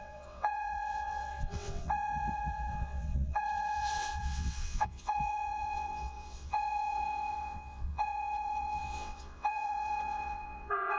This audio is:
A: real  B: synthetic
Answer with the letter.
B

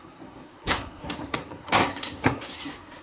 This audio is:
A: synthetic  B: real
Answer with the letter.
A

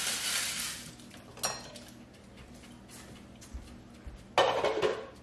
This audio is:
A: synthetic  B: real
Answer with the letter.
B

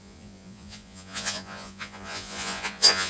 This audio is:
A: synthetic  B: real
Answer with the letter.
A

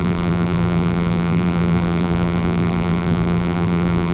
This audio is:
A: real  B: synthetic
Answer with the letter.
B